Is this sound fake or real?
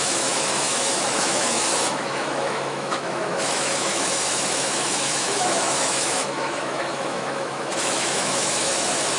fake